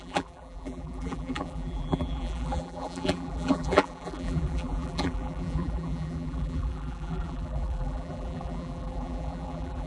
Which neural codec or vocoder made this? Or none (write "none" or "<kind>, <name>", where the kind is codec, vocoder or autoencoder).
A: vocoder, BigVGAN v2